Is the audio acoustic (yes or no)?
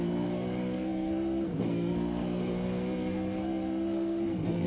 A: no